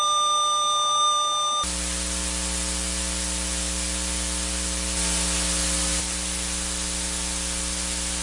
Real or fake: real